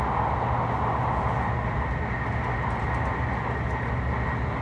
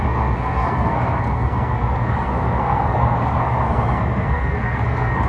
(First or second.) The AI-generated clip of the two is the second